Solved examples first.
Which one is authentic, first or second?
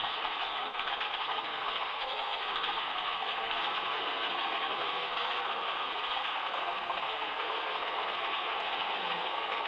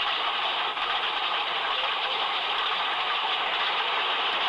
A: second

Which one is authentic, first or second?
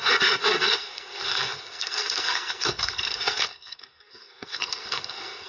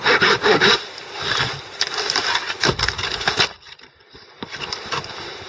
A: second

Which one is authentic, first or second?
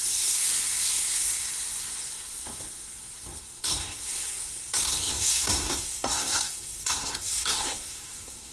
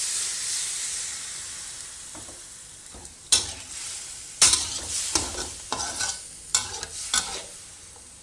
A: second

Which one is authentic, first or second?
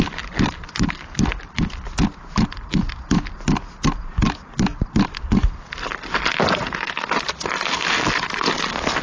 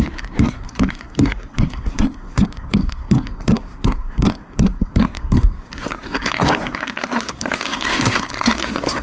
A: first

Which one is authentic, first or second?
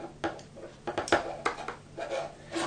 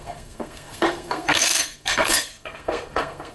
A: first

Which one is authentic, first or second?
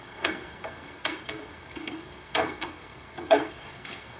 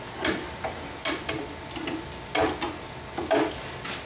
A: second